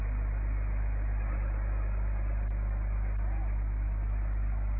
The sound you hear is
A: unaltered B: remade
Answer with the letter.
A